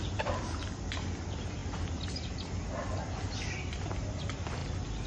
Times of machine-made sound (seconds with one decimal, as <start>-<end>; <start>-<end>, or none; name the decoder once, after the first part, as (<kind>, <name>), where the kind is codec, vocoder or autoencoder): none